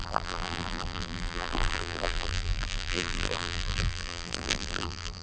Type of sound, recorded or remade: remade